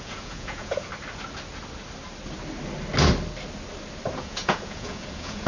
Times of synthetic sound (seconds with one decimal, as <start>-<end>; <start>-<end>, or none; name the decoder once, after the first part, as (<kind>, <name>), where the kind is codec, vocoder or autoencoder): 0.0-0.9 (vocoder, Vocos); 4.2-5.5